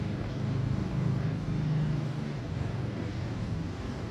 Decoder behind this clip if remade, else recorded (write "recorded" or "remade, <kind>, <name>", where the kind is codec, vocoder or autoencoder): remade, codec, DAC